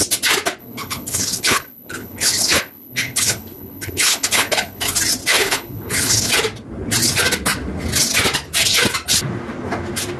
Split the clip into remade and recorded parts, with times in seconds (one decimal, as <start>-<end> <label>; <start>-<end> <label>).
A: 0.0-0.6 recorded; 0.6-4.8 remade; 4.8-5.3 recorded; 5.3-6.3 remade; 6.3-10.2 recorded